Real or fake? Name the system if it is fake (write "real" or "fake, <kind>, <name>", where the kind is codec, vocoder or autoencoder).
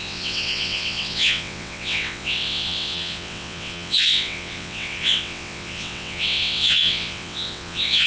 fake, vocoder, WaveNeXt